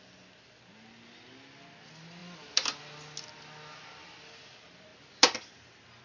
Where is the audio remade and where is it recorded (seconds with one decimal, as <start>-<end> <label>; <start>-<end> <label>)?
0.0-6.0 recorded